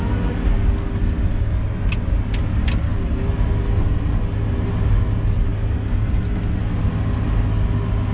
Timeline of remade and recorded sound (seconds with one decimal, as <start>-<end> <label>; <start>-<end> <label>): 0.0-5.5 recorded; 5.5-6.1 remade; 6.1-8.1 recorded

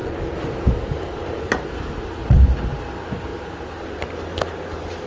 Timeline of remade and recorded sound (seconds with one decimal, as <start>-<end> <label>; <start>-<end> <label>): 0.0-2.5 remade; 2.5-3.3 recorded; 3.3-4.1 remade; 4.1-5.1 recorded

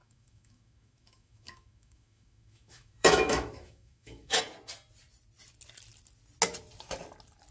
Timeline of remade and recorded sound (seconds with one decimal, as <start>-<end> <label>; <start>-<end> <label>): 0.0-4.4 remade; 4.4-7.5 recorded

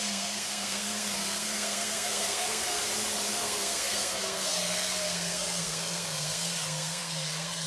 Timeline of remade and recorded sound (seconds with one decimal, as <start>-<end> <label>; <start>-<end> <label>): 0.0-2.8 remade; 2.8-3.3 recorded; 3.3-7.7 remade

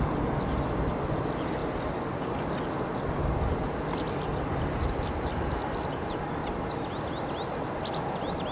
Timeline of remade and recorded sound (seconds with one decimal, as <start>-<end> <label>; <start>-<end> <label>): 0.0-8.5 recorded

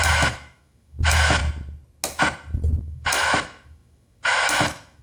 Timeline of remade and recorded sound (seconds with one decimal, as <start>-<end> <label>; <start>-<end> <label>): 0.0-1.4 remade; 1.4-2.8 recorded; 2.8-5.0 remade